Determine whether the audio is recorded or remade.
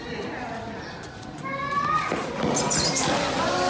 recorded